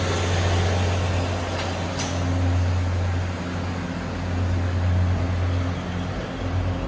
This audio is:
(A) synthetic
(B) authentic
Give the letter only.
B